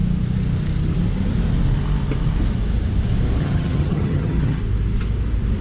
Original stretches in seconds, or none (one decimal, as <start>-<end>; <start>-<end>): 0.0-3.4; 4.6-5.6